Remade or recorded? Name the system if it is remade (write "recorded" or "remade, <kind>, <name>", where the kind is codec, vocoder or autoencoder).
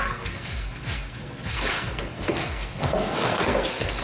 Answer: remade, codec, SNAC